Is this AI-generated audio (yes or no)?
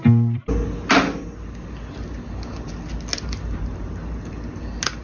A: no